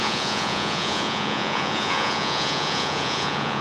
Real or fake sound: fake